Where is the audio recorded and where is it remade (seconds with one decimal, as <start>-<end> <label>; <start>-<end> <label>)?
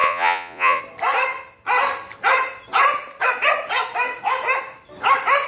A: 0.0-0.8 remade; 0.8-5.5 recorded